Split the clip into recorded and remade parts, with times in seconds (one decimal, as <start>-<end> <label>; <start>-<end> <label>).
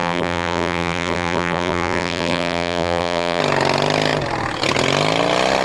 0.0-3.4 remade; 3.4-5.6 recorded